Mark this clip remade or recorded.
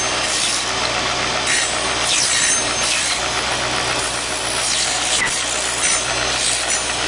recorded